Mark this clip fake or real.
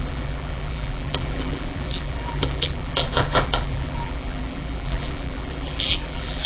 fake